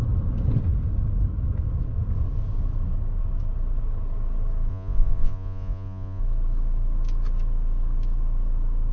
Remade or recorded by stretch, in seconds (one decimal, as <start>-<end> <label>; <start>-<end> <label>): 0.0-4.7 recorded; 4.7-6.2 remade; 6.2-8.9 recorded